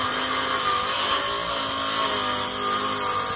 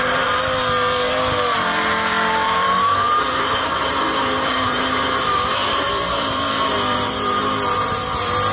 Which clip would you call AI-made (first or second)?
second